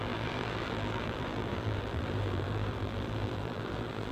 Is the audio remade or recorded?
remade